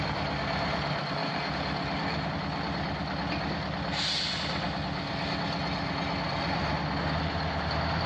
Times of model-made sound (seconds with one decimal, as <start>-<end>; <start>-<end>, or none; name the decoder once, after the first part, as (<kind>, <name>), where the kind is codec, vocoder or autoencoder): none